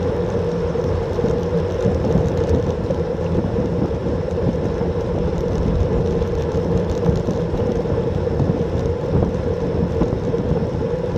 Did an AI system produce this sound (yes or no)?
yes